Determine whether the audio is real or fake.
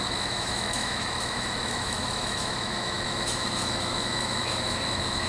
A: fake